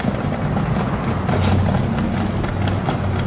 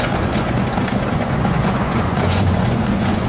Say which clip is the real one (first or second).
first